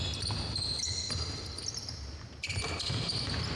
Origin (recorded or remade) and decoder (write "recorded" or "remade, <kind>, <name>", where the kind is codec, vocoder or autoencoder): recorded